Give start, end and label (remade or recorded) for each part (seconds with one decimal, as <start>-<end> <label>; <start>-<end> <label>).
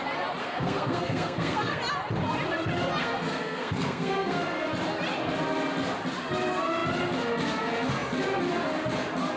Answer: 0.0-0.4 recorded; 0.4-1.8 remade; 1.8-3.0 recorded; 3.0-4.7 remade; 4.7-9.4 recorded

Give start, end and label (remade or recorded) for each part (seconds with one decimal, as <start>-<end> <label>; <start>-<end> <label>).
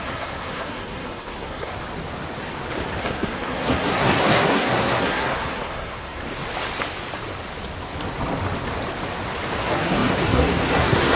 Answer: 0.0-1.7 remade; 1.7-3.0 recorded; 3.0-6.2 remade; 6.2-9.6 recorded; 9.6-11.2 remade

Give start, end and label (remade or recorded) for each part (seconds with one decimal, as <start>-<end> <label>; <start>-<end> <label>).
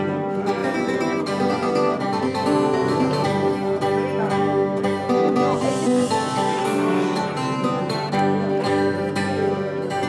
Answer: 0.0-6.6 recorded; 6.6-7.2 remade; 7.2-10.1 recorded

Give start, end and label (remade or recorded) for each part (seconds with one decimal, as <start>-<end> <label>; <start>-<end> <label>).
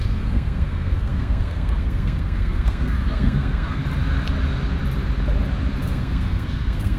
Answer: 0.0-3.8 remade; 3.8-5.8 recorded; 5.8-7.0 remade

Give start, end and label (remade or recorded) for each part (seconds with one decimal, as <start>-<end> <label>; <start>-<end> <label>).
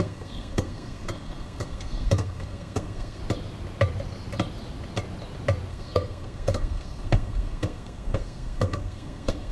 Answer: 0.0-3.2 remade; 3.2-5.7 recorded; 5.7-9.5 remade